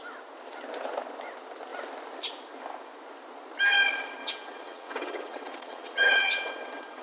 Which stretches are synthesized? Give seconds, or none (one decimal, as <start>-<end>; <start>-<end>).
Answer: 4.2-7.0